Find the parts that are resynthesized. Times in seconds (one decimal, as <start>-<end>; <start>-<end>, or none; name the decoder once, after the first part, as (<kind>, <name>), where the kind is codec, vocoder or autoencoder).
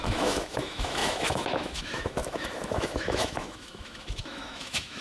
0.0-5.0 (autoencoder, DAC-VAE)